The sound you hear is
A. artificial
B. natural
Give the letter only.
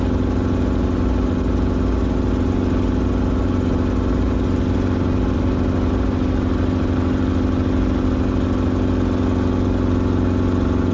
B